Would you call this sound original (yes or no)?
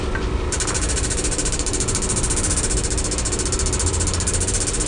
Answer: yes